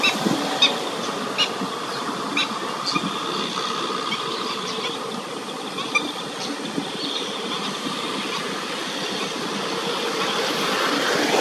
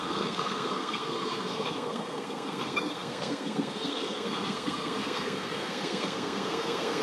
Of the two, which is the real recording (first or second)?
first